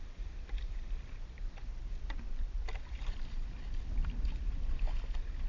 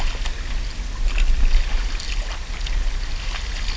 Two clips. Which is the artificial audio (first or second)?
first